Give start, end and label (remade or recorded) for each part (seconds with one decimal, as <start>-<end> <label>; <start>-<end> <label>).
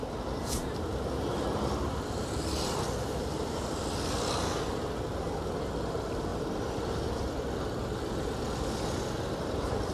0.0-9.9 recorded